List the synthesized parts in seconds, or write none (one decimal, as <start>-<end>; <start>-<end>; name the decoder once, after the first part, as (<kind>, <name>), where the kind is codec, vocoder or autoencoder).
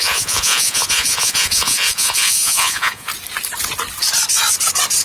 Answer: 0.0-3.1 (vocoder, Vocos)